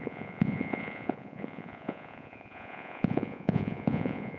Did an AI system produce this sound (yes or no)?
yes